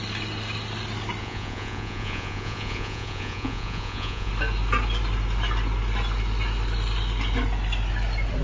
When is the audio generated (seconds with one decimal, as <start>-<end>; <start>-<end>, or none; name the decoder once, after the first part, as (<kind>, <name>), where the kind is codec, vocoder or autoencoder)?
1.2-4.3 (vocoder, Vocos)

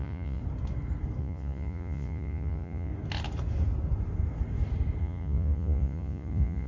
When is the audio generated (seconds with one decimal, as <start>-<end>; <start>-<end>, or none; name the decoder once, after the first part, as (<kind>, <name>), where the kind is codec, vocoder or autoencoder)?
0.0-0.4 (vocoder, Vocos); 1.2-2.9; 5.0-6.7